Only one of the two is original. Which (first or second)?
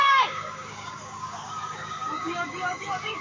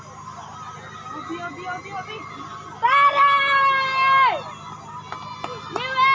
second